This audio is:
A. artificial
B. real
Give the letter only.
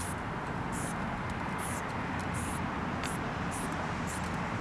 B